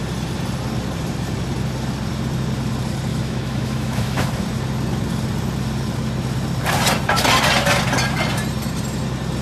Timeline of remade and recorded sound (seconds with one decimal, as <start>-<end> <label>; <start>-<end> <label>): 0.0-3.1 recorded; 3.1-4.3 remade; 4.3-9.4 recorded